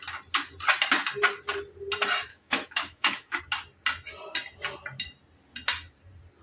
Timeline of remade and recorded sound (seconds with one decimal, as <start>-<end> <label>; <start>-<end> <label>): 0.0-2.3 recorded; 2.3-3.4 remade; 3.4-6.4 recorded